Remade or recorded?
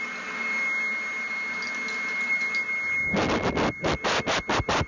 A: recorded